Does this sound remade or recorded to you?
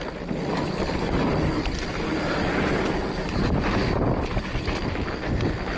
recorded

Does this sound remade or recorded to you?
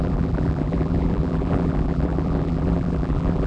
remade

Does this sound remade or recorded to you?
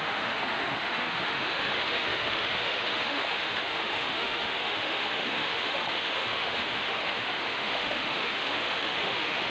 remade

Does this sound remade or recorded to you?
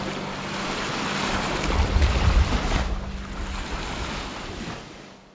recorded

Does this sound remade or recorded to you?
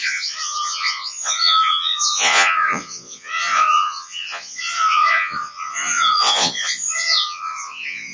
remade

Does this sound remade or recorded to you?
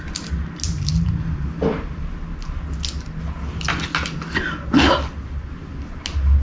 recorded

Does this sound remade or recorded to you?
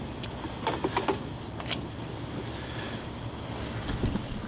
recorded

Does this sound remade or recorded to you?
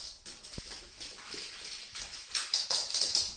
remade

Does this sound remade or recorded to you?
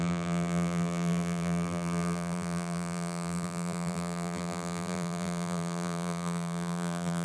remade